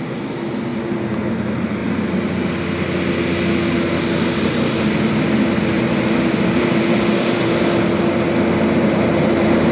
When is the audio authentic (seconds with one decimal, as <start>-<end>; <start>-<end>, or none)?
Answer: 0.0-9.7

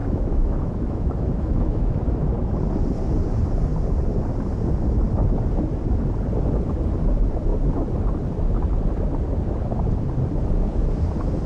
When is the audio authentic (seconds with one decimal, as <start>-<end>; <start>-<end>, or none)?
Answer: 2.5-11.5

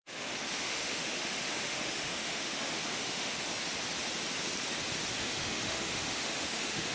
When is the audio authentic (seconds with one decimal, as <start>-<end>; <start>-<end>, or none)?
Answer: 3.5-5.2

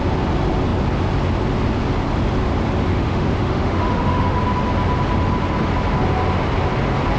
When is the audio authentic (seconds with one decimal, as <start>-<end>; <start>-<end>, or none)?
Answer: 0.0-2.9; 4.4-7.2

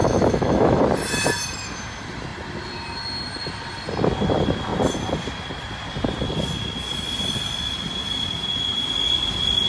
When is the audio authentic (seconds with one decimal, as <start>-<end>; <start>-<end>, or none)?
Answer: 0.8-9.7

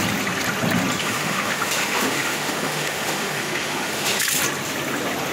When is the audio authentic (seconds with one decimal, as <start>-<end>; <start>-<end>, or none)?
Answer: 0.0-1.0; 4.2-5.3

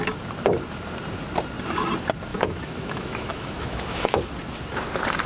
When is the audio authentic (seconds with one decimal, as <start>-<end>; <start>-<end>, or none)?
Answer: 0.0-2.3; 4.2-5.3